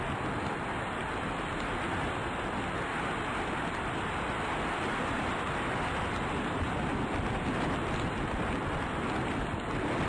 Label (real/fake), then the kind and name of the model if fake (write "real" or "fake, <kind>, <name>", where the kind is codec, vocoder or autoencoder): real